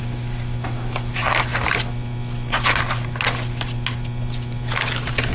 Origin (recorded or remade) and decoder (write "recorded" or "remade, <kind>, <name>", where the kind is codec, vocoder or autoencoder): recorded